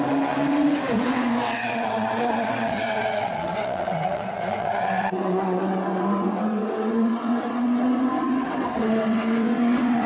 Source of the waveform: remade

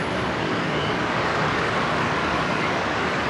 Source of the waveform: remade